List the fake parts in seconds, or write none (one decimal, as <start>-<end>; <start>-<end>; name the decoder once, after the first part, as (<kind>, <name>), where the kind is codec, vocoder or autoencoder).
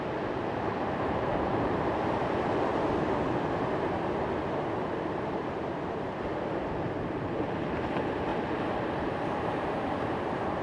0.0-2.7 (vocoder, BigVGAN v2); 7.0-8.3; 9.0-10.6